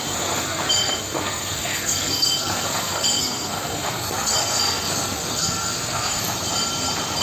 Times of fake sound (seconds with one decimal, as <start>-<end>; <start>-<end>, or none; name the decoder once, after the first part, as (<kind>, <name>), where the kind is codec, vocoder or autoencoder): 0.0-6.2 (codec, SNAC)